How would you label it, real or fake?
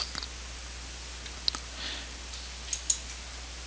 real